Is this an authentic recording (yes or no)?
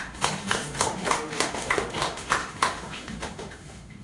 no